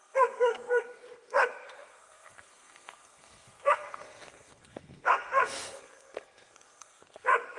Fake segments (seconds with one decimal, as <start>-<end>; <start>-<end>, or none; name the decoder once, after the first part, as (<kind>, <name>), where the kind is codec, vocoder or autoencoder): 0.0-7.6 (codec, SNAC)